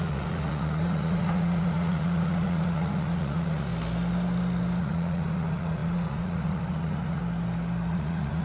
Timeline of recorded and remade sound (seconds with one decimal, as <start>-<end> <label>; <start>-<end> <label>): 0.0-3.7 remade; 3.7-4.8 recorded; 4.8-7.2 remade; 7.2-7.9 recorded; 7.9-8.4 remade